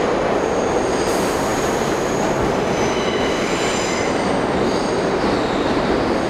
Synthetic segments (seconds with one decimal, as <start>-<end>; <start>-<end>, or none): none